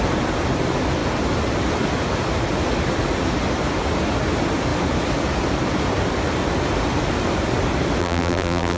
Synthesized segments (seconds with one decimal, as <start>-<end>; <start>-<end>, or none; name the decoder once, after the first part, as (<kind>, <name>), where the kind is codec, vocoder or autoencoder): 8.0-8.8 (vocoder, BigVGAN v2)